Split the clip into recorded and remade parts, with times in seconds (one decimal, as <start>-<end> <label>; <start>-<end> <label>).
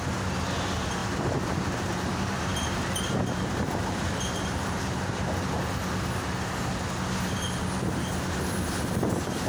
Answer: 0.0-1.0 recorded; 1.0-5.2 remade; 5.2-9.5 recorded